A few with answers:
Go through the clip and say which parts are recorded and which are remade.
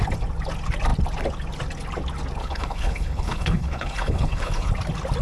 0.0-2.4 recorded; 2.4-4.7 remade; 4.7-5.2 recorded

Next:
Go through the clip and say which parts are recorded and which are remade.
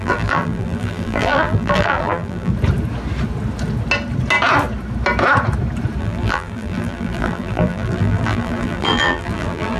0.0-2.5 remade; 2.5-6.0 recorded; 6.0-9.8 remade